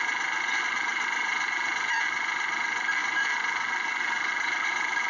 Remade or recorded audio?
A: recorded